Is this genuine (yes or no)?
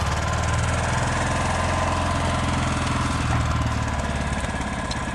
yes